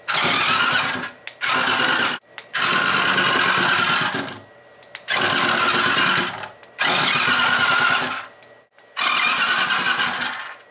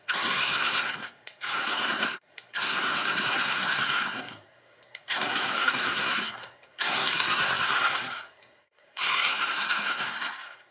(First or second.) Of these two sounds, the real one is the first